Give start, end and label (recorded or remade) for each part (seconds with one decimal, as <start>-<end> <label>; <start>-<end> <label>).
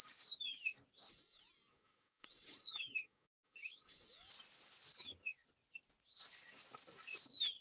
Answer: 0.0-1.1 recorded; 1.1-4.3 remade; 4.3-7.6 recorded